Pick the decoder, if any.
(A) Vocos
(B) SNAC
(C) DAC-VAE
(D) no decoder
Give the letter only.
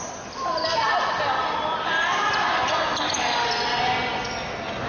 D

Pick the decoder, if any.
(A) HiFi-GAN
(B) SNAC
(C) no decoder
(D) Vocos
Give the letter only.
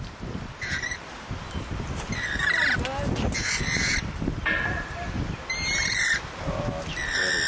C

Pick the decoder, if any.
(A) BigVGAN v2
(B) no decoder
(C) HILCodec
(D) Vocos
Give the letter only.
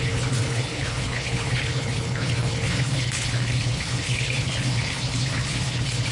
C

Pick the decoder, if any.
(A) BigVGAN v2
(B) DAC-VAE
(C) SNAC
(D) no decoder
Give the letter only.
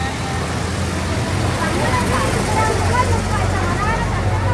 D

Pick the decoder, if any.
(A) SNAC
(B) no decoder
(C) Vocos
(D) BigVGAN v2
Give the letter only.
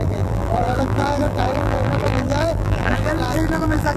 D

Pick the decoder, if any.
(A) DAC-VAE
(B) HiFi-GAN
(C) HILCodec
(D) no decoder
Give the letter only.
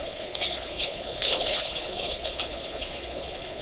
C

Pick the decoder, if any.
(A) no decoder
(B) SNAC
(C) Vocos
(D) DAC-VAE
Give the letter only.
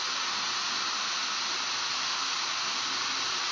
A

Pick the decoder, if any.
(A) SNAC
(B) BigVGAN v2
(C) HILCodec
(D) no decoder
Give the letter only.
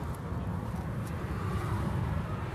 D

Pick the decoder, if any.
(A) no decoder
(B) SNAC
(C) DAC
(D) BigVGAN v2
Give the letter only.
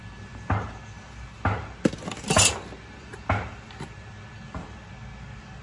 A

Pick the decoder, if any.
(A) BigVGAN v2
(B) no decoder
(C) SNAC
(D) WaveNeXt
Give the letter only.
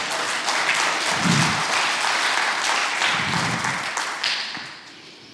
B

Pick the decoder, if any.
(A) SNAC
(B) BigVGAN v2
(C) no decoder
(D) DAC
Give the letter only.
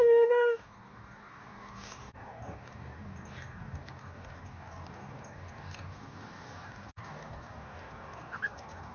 D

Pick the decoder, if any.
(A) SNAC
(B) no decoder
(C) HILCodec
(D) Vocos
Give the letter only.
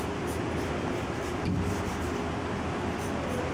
B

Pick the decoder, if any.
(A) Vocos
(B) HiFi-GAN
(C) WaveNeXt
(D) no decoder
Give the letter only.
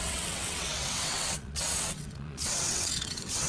C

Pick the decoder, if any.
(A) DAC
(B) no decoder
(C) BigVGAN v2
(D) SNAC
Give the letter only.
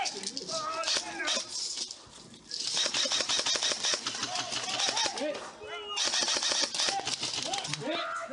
B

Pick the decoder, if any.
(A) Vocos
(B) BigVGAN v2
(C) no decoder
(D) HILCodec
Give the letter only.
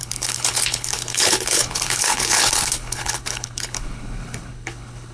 D